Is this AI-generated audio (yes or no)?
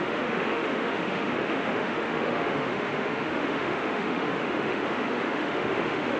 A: yes